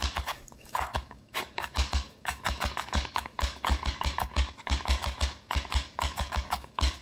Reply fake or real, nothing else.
fake